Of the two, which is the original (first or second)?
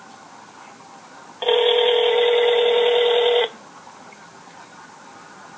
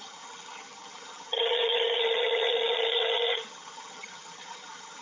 first